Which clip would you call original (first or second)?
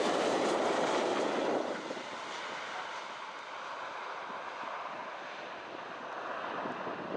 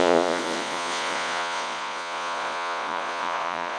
first